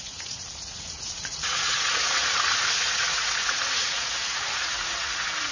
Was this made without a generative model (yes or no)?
no